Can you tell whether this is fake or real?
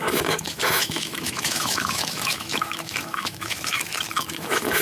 fake